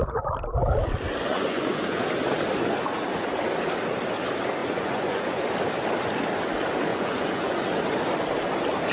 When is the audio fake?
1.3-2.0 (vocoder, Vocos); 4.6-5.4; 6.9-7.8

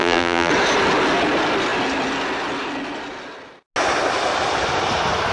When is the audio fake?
0.0-0.5 (vocoder, BigVGAN v2)

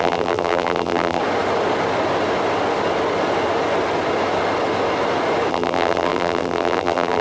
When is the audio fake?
0.0-1.2 (vocoder, BigVGAN v2); 5.5-7.2

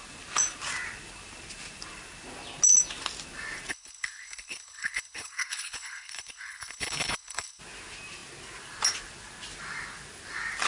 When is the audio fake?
3.7-7.6 (codec, HILCodec)